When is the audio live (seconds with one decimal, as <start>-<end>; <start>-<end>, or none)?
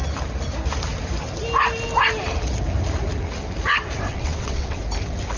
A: 0.0-4.1; 4.8-5.4